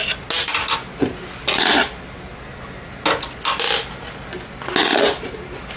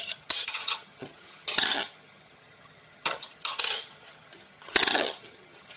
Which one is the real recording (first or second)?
first